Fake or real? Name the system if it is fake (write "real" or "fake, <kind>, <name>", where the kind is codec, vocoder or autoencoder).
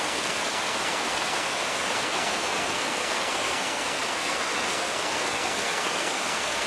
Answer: fake, codec, SNAC